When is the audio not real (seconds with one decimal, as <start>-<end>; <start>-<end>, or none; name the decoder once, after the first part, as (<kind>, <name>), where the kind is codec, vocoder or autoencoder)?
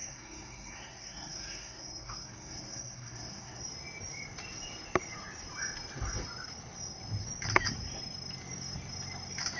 0.0-3.6 (codec, SNAC)